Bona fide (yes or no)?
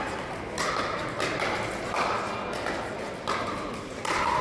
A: yes